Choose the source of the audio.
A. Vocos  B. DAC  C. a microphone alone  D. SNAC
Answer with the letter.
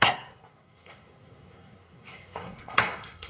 D